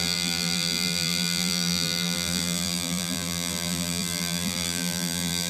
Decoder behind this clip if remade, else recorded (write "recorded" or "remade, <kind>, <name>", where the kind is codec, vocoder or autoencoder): remade, vocoder, BigVGAN v2